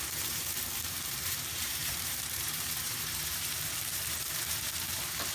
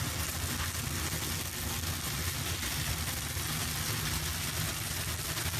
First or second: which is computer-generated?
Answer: first